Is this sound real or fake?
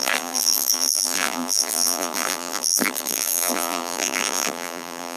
fake